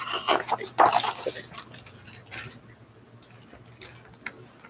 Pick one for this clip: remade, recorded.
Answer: recorded